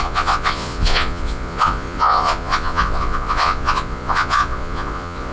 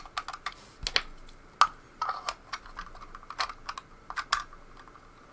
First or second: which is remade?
first